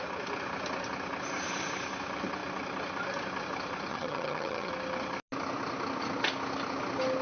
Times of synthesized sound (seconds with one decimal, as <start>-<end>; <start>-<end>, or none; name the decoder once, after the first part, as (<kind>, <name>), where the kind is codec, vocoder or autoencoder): 3.9-4.7 (vocoder, HiFi-GAN)